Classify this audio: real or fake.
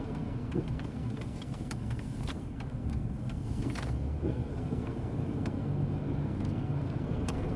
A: fake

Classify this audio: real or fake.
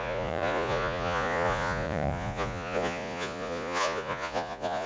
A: fake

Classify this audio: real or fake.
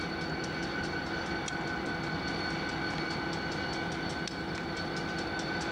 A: real